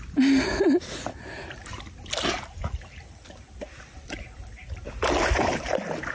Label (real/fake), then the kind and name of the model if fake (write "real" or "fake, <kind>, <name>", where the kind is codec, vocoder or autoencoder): real